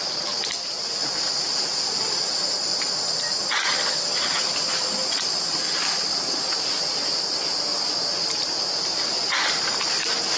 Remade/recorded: recorded